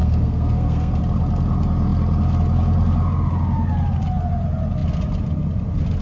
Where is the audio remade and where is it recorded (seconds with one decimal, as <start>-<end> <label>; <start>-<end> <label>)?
0.0-1.0 remade; 1.0-6.0 recorded